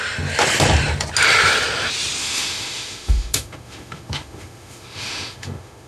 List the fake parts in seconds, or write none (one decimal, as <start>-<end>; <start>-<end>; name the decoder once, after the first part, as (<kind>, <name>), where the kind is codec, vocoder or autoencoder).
2.2-5.9 (autoencoder, DAC-VAE)